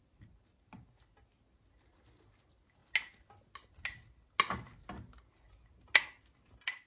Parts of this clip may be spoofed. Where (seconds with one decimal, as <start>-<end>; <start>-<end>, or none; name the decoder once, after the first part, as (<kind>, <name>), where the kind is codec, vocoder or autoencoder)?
none